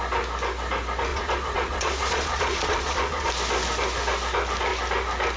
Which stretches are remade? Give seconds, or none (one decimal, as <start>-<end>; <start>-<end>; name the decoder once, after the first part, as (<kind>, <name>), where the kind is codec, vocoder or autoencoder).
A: 1.1-3.3 (vocoder, Vocos)